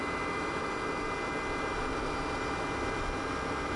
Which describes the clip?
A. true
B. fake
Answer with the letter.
A